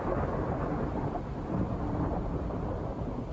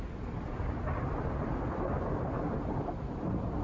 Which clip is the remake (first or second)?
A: second